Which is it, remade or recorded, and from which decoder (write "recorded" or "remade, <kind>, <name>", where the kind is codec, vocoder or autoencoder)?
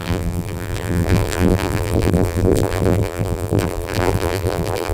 remade, vocoder, BigVGAN v2